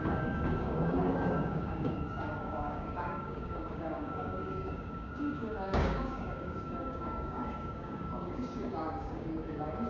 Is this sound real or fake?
fake